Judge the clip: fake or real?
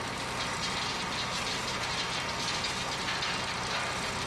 real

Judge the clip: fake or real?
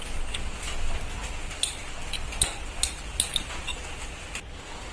real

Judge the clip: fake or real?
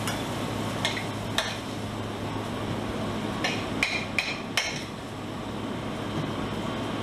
real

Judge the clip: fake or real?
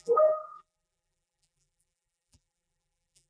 fake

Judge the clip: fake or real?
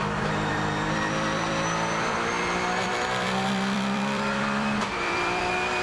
fake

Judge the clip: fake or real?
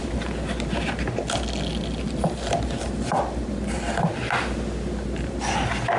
real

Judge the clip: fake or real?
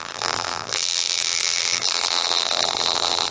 fake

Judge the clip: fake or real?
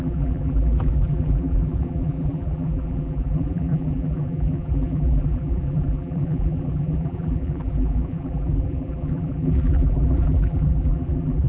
fake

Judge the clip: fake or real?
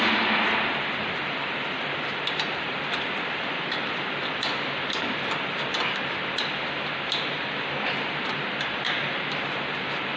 fake